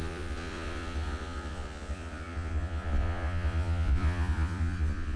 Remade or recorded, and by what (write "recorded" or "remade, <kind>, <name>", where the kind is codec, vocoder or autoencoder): remade, vocoder, Vocos